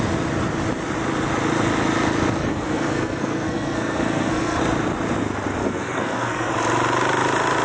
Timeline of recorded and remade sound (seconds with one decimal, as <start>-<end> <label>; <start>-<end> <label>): 0.0-2.5 recorded; 2.5-4.6 remade; 4.6-5.6 recorded; 5.6-6.5 remade; 6.5-7.6 recorded